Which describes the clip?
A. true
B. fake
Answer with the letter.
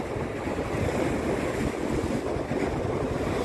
A